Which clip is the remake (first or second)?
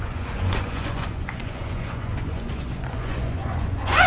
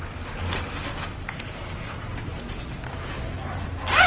first